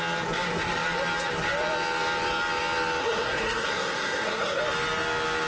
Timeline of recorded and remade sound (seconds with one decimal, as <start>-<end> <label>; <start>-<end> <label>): 0.0-3.0 recorded; 3.0-4.6 remade; 4.6-5.5 recorded